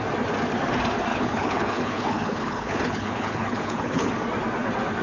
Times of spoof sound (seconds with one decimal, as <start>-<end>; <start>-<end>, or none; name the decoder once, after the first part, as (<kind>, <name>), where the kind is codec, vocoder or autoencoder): 1.1-4.1 (codec, HILCodec)